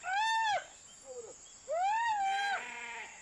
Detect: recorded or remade recorded